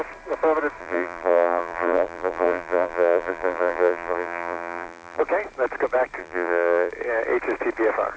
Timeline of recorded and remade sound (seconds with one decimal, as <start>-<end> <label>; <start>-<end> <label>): 0.0-0.8 recorded; 0.8-5.2 remade; 5.2-6.2 recorded; 6.2-6.9 remade; 6.9-8.2 recorded